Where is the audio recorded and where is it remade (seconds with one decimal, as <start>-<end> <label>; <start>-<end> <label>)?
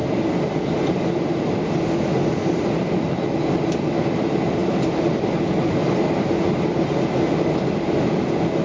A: 0.0-8.6 recorded